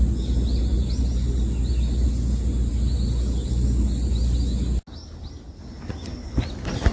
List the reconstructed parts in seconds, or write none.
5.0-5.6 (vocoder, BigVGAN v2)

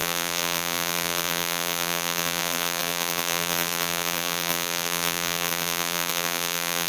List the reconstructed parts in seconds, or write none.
0.0-6.9 (vocoder, BigVGAN v2)

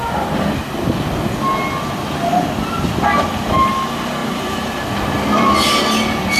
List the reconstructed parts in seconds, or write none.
4.2-4.7 (vocoder, BigVGAN v2)

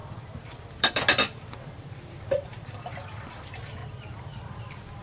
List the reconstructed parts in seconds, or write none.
0.0-3.8 (vocoder, BigVGAN v2); 4.6-5.0